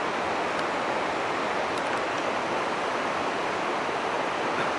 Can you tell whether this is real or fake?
real